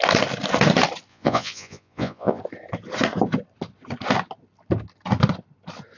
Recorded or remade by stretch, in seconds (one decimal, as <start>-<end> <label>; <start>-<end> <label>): 0.0-1.1 recorded; 1.1-2.4 remade; 2.4-6.0 recorded